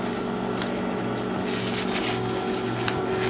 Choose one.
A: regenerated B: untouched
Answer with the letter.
B